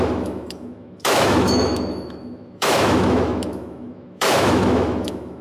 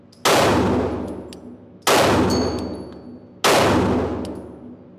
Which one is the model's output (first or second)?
first